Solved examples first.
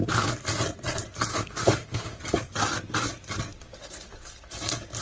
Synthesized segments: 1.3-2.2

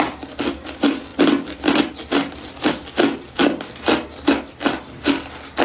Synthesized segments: none

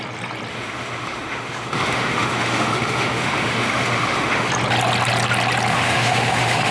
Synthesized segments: 0.5-4.5; 5.7-6.7

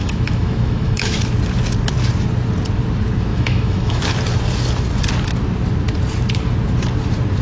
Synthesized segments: 0.0-1.1; 3.3-4.0

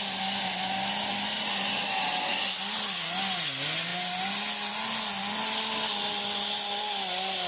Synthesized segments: none

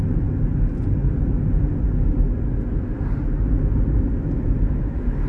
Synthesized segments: none